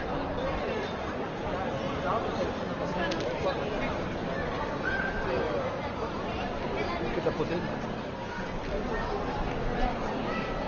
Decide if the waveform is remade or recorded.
recorded